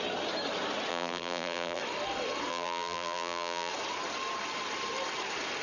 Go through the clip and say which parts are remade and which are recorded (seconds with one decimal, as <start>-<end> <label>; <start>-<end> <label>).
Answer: 0.0-0.9 recorded; 0.9-1.8 remade; 1.8-2.5 recorded; 2.5-3.7 remade; 3.7-5.6 recorded